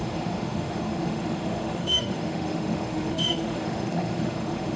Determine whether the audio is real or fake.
fake